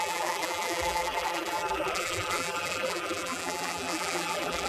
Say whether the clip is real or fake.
fake